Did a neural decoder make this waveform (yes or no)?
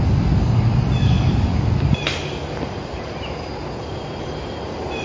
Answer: no